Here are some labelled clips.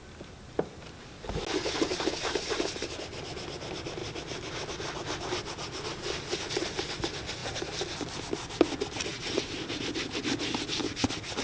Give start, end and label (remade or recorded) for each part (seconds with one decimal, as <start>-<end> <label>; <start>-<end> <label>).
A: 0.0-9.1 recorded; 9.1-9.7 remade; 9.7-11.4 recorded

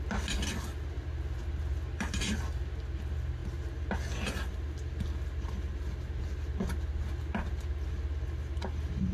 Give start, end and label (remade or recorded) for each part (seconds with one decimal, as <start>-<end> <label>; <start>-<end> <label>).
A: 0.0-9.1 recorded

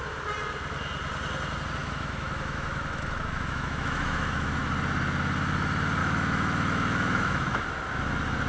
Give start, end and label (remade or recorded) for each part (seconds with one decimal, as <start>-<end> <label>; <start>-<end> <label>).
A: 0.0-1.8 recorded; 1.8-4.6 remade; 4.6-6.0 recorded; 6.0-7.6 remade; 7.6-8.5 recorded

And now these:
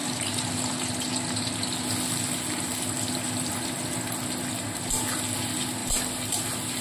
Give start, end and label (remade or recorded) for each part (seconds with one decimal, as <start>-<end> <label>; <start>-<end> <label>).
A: 0.0-6.8 recorded